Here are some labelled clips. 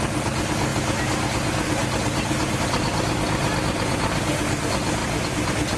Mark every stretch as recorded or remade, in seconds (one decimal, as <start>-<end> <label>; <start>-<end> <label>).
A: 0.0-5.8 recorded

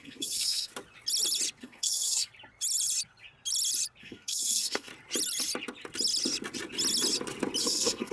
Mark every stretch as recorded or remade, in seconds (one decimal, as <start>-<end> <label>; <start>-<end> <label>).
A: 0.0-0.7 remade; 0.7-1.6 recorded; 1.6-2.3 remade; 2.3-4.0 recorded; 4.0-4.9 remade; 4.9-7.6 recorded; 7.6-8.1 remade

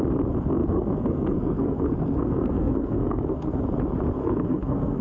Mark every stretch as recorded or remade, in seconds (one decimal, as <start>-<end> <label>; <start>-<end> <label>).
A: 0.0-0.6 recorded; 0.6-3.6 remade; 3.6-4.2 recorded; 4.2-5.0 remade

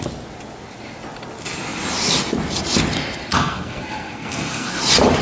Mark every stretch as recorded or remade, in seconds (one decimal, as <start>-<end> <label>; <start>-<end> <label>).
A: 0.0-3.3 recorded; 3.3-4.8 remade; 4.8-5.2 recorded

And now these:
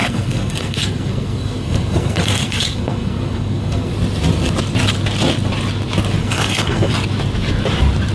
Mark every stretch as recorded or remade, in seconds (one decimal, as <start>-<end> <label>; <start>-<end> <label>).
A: 0.0-3.9 remade; 3.9-6.2 recorded; 6.2-6.9 remade; 6.9-8.1 recorded

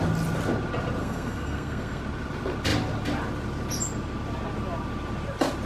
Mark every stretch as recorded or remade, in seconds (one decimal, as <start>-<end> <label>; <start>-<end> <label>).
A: 0.0-1.0 recorded; 1.0-2.0 remade; 2.0-5.7 recorded

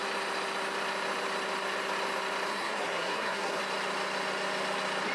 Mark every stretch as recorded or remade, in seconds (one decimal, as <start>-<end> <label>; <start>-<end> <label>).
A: 0.0-2.5 recorded; 2.5-3.6 remade; 3.6-5.1 recorded